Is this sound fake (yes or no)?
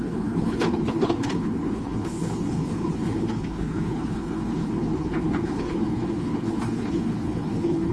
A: yes